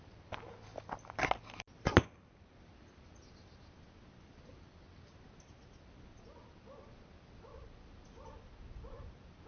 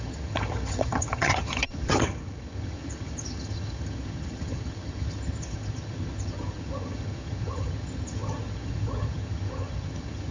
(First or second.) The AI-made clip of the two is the second